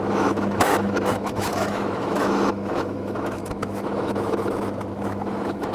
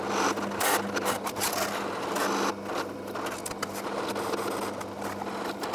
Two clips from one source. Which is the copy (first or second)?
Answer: first